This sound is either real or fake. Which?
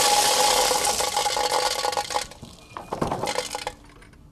real